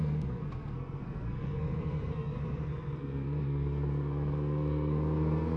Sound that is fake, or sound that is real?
fake